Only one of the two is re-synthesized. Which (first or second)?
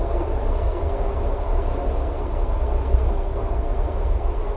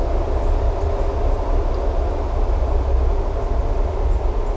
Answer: first